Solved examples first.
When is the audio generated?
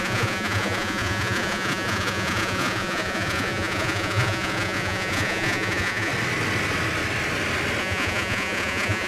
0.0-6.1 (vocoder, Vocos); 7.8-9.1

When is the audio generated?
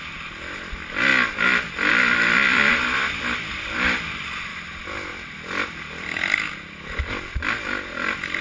0.0-2.7 (vocoder, BigVGAN v2); 3.5-4.5; 5.1-8.4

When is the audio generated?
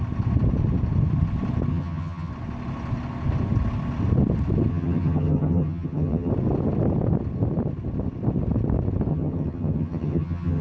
1.7-2.3 (vocoder, HiFi-GAN); 4.7-6.3; 9.1-10.6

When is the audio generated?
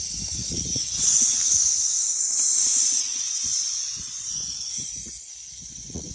0.4-1.3 (vocoder, Vocos); 2.8-6.1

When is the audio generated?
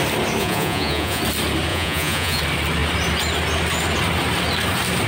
0.4-1.2 (vocoder, Vocos); 1.7-2.4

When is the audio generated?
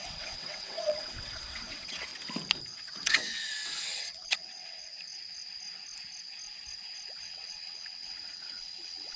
0.0-2.1 (vocoder, WaveNeXt); 2.6-4.9; 7.2-9.2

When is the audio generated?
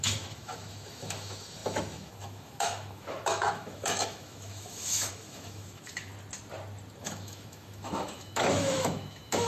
0.0-6.1 (autoencoder, DAC-VAE); 7.0-9.5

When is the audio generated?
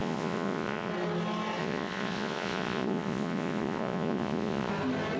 0.0-0.9 (vocoder, Vocos); 1.6-4.7